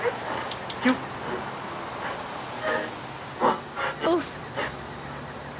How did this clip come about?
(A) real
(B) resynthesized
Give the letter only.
A